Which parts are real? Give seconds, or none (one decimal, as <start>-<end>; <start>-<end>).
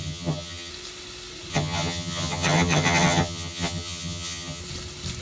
0.7-1.5; 4.6-5.2